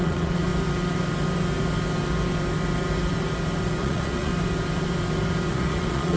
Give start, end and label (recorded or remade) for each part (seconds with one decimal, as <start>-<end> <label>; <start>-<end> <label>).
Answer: 0.0-0.5 remade; 0.5-3.8 recorded; 3.8-4.3 remade; 4.3-5.5 recorded; 5.5-6.2 remade